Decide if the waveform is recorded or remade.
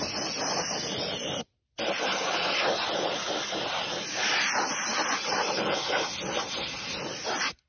recorded